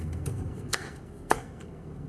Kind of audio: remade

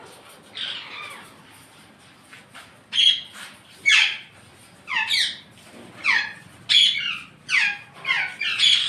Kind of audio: recorded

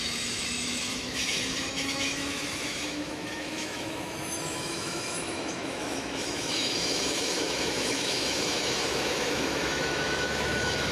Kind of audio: remade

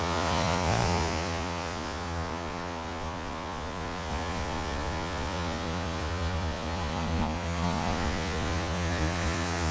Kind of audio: remade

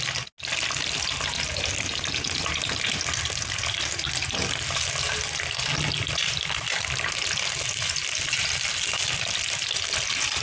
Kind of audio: recorded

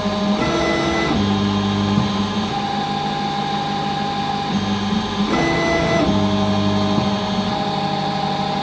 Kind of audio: recorded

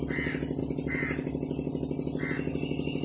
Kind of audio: recorded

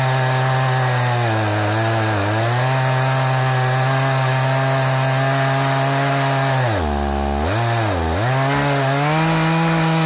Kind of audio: recorded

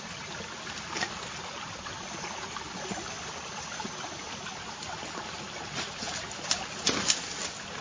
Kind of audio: recorded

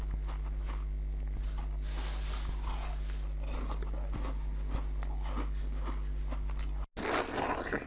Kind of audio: recorded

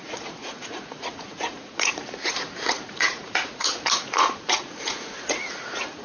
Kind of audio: remade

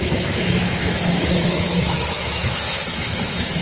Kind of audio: remade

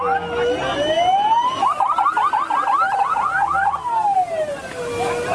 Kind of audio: recorded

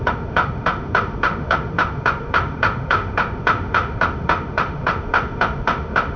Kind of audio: remade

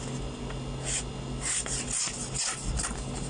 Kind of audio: recorded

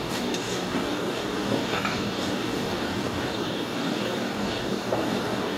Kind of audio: remade